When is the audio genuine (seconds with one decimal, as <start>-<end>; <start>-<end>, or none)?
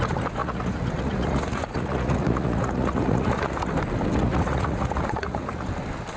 0.0-0.4; 3.7-4.2; 5.7-6.2